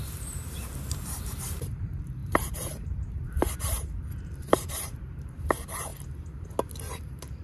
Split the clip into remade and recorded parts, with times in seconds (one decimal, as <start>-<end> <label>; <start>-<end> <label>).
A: 0.0-5.9 remade; 5.9-6.9 recorded; 6.9-7.4 remade